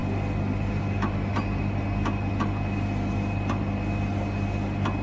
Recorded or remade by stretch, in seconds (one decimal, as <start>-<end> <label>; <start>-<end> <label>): 0.0-5.0 recorded